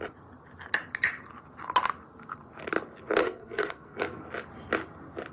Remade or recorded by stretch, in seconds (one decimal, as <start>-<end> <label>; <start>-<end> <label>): 0.0-3.2 recorded; 3.2-4.2 remade; 4.2-5.3 recorded